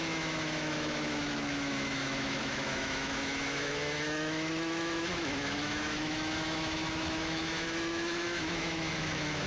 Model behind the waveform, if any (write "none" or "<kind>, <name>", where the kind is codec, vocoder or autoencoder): autoencoder, DAC-VAE